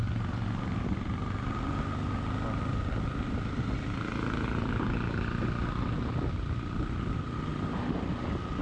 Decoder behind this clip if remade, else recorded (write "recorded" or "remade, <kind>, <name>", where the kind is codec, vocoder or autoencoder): recorded